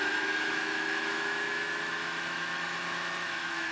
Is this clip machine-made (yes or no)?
yes